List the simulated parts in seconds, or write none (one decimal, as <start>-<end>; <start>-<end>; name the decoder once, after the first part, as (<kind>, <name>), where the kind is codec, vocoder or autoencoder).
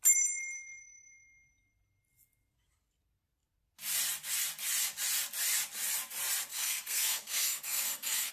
6.5-8.3 (codec, SNAC)